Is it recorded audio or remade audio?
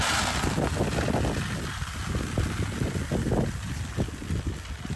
recorded